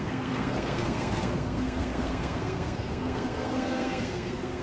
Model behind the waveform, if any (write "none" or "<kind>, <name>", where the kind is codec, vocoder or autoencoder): codec, SNAC